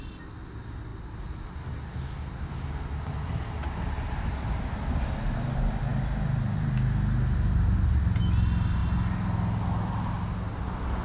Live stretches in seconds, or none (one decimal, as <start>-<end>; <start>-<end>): 0.0-11.0

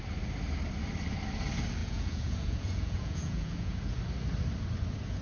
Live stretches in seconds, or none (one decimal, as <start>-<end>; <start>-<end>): 0.0-1.8; 4.0-5.2

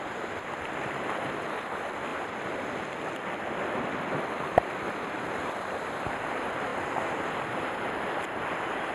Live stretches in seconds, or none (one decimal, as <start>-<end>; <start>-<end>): 0.0-8.9

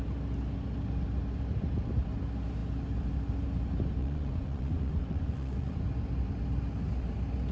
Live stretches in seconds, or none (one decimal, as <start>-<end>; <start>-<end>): 0.0-4.0; 5.8-7.5

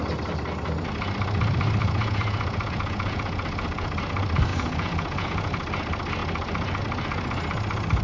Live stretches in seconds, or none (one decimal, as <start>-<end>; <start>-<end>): 0.0-1.8; 4.0-4.5; 5.5-8.0

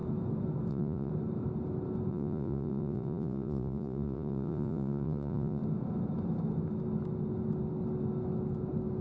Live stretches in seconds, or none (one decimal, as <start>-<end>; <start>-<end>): 0.0-0.7; 1.1-2.1; 5.6-9.0

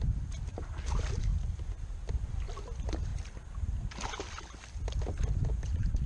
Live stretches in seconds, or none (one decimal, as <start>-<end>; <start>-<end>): 0.0-6.1